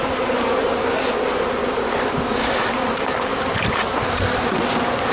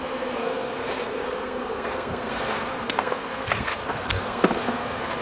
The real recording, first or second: first